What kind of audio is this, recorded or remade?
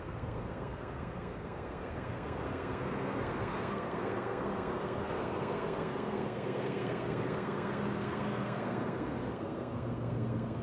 remade